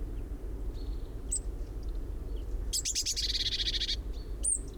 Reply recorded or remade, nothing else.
recorded